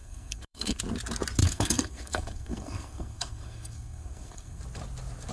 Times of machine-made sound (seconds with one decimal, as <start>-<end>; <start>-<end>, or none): 0.0-0.8; 1.4-4.6